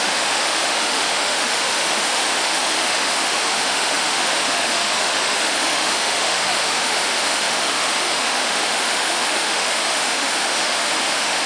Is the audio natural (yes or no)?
no